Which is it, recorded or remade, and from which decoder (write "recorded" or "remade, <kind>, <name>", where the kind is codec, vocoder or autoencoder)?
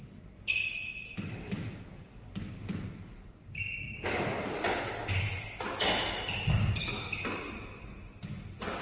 recorded